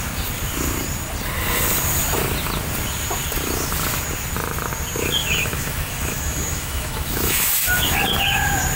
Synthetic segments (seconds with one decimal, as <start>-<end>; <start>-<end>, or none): 5.2-7.5